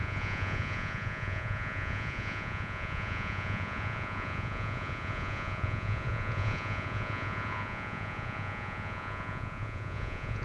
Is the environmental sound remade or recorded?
remade